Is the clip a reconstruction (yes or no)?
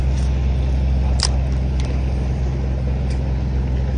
no